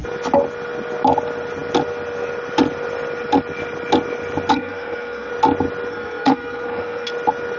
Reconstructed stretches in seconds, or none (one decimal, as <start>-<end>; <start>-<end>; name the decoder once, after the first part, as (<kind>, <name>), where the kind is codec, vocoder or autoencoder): 4.5-5.3 (codec, SNAC); 5.9-7.1